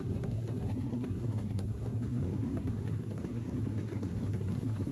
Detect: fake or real fake